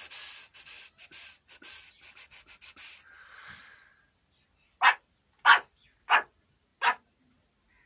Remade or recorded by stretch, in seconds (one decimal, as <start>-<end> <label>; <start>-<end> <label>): 0.0-7.9 recorded